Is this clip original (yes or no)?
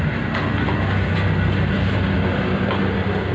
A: yes